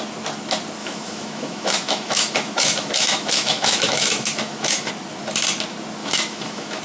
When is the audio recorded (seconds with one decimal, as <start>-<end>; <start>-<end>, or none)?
0.0-0.8; 4.9-6.0